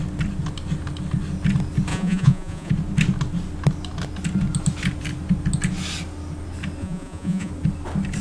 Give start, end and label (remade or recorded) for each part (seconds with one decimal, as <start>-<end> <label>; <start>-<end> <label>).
0.0-1.9 recorded; 1.9-2.7 remade; 2.7-6.8 recorded; 6.8-7.5 remade; 7.5-8.2 recorded